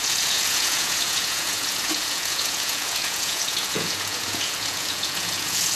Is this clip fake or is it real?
fake